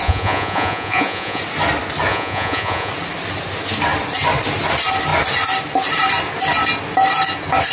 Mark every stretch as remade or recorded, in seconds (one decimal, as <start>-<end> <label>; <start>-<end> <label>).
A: 0.0-1.4 remade; 1.4-2.1 recorded; 2.1-2.9 remade; 2.9-7.7 recorded

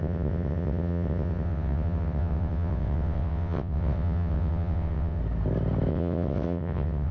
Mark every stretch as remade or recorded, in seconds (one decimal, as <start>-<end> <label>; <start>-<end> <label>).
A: 0.0-5.2 remade; 5.2-5.9 recorded; 5.9-7.1 remade

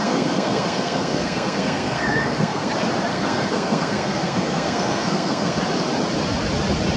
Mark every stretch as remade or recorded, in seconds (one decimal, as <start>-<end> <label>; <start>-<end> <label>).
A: 0.0-2.7 remade; 2.7-3.1 recorded; 3.1-5.6 remade; 5.6-7.0 recorded

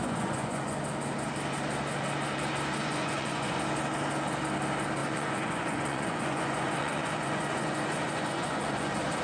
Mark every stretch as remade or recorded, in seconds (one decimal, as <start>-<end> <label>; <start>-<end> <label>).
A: 0.0-0.8 remade; 0.8-2.8 recorded; 2.8-3.6 remade; 3.6-5.0 recorded; 5.0-9.2 remade

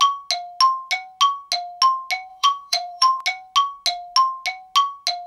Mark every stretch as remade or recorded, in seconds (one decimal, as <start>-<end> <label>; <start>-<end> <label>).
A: 0.0-2.3 recorded; 2.3-3.2 remade; 3.2-5.3 recorded